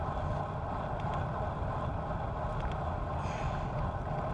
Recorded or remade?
recorded